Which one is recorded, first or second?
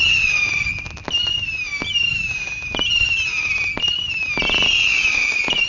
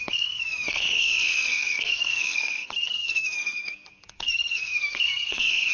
first